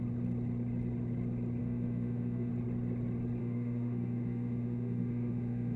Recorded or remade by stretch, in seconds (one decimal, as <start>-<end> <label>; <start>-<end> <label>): 0.0-1.6 recorded; 1.6-2.5 remade; 2.5-3.4 recorded; 3.4-5.8 remade